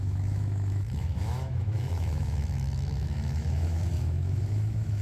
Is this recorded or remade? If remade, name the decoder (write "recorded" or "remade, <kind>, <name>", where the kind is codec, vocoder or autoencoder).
remade, autoencoder, DAC-VAE